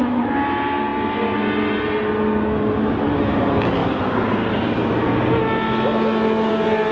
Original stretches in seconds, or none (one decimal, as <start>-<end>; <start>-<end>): 0.0-6.9